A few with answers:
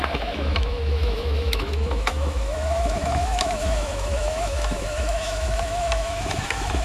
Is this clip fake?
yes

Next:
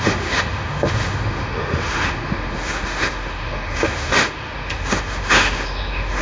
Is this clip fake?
yes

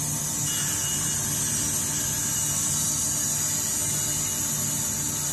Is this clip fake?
no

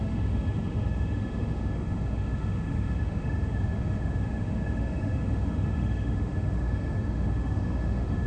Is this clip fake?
yes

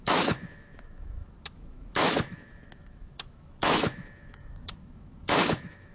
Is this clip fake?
yes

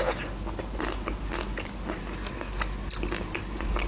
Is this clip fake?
no